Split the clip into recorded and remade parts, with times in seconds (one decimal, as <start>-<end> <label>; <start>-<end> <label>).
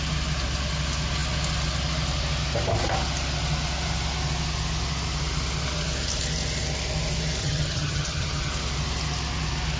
0.0-7.4 recorded; 7.4-8.5 remade; 8.5-9.8 recorded